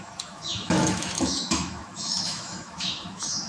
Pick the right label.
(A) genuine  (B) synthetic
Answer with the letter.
B